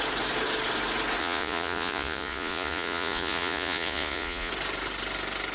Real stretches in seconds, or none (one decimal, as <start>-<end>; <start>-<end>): 0.0-1.2; 4.5-5.5